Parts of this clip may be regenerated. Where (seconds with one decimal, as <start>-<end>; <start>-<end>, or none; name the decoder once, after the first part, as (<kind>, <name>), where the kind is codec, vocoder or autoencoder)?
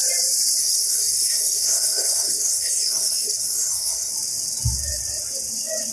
0.6-4.1 (codec, SNAC)